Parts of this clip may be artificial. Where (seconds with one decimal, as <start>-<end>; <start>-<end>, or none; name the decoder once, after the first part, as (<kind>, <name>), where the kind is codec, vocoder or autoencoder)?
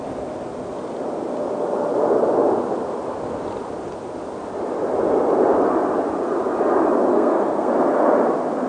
7.1-7.7 (codec, SNAC)